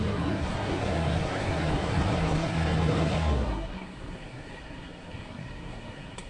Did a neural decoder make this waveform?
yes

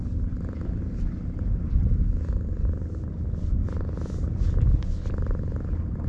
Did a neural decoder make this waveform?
no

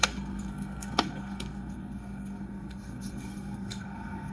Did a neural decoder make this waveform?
yes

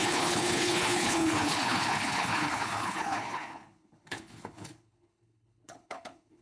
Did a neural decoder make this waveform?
yes